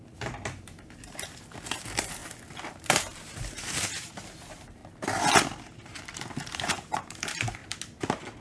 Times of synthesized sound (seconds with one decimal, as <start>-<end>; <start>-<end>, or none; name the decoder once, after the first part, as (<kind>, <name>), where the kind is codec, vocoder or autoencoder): 0.0-2.2 (vocoder, BigVGAN v2); 2.7-4.8; 5.6-7.6